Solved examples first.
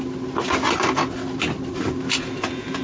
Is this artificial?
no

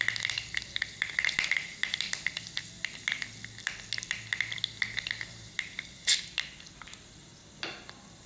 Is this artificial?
no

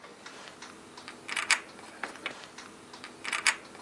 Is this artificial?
no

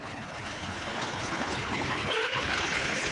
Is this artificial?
yes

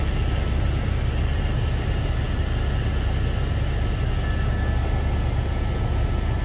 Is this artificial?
no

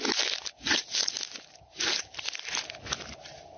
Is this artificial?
no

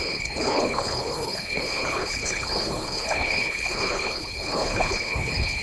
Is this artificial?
yes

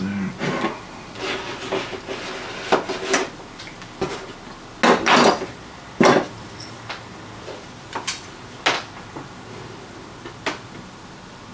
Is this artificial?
no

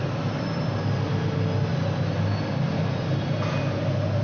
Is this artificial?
no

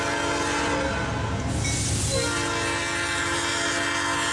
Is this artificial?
no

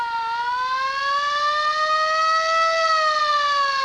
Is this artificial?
no